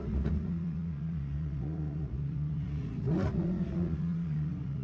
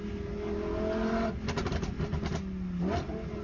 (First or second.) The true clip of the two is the second